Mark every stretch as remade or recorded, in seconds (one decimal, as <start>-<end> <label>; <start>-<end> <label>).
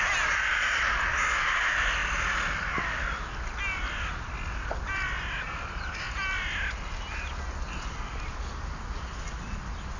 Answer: 0.0-10.0 recorded